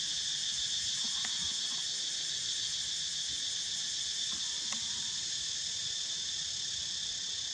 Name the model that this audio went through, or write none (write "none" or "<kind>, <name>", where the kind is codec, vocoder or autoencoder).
none